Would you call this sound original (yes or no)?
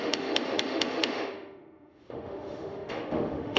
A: no